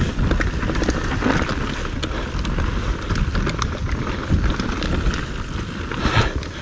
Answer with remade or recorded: recorded